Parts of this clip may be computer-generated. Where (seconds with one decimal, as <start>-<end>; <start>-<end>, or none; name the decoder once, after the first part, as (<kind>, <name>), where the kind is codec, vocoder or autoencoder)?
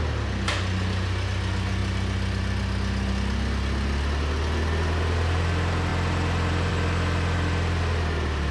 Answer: none